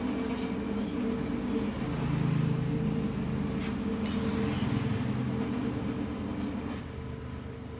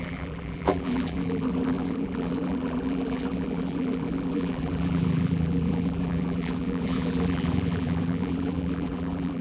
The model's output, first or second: second